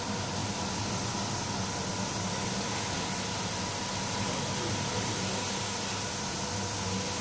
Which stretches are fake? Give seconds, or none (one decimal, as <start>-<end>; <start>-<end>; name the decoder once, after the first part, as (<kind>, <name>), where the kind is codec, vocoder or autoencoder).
none